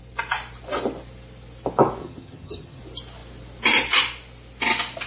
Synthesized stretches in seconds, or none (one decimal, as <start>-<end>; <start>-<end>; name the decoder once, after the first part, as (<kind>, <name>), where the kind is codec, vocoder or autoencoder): 2.0-2.8 (vocoder, HiFi-GAN)